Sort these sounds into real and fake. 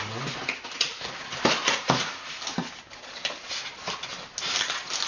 real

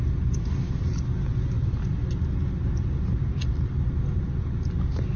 real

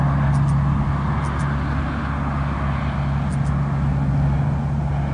real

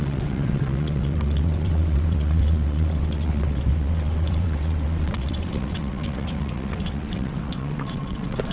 fake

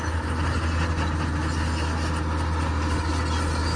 real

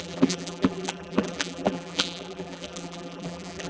fake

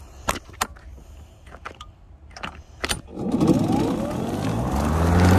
real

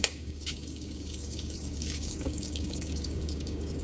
fake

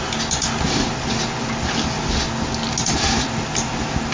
real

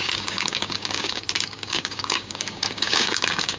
fake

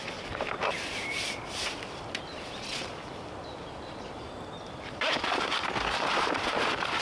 fake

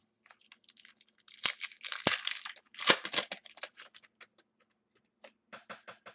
real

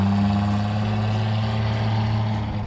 real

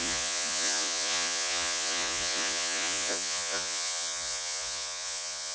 fake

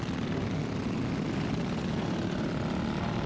real